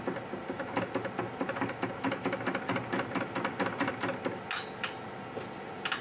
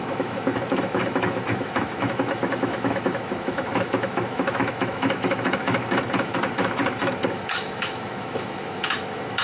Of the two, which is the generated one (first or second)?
second